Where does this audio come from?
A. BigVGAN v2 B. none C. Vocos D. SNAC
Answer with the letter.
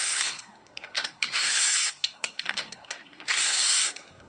D